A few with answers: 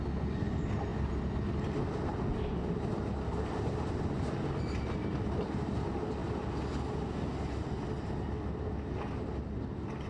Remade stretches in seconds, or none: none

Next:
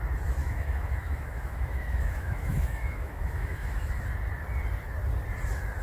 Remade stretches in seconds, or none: 0.4-3.9 (autoencoder, DAC-VAE)

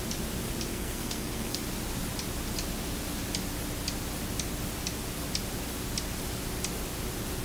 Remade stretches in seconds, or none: 0.7-1.6 (codec, SNAC)